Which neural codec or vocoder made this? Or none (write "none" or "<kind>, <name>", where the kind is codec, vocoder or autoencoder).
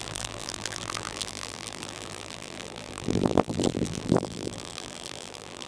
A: vocoder, BigVGAN v2